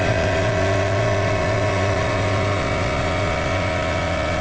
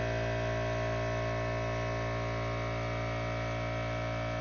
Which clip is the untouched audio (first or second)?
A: second